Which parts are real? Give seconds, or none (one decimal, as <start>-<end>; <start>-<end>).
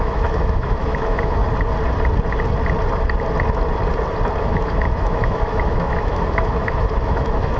1.4-4.4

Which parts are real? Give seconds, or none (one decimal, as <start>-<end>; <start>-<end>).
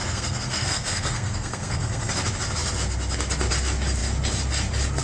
2.1-5.0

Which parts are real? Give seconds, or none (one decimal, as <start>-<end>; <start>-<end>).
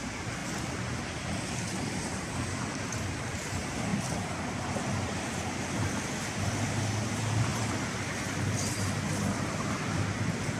0.0-10.6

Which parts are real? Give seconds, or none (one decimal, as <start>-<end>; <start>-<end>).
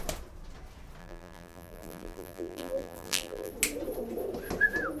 0.0-1.0; 3.5-5.0